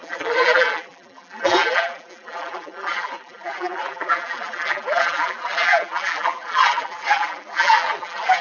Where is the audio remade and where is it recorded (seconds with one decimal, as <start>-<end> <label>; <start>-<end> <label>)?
0.0-8.4 remade